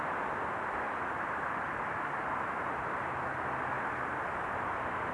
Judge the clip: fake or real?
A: real